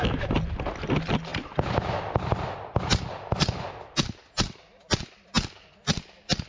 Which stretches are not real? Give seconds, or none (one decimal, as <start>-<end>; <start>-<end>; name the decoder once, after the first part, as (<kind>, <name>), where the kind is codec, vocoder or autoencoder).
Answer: none